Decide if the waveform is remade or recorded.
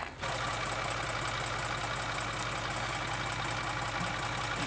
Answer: recorded